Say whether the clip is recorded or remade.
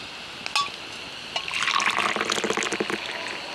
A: recorded